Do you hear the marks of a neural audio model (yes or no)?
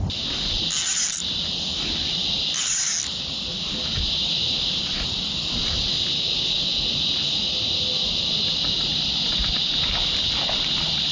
no